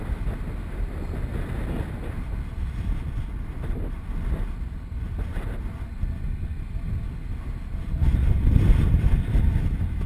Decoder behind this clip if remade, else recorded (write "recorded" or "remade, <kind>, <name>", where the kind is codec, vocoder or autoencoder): recorded